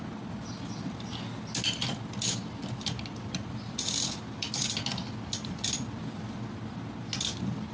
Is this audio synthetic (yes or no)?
no